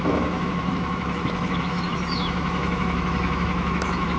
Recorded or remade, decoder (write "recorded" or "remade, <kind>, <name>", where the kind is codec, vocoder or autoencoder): remade, autoencoder, DAC-VAE